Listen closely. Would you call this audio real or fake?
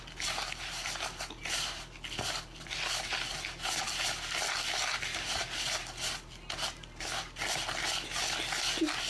real